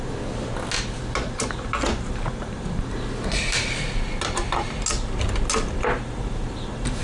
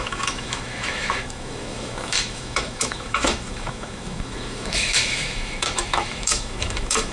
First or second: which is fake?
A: second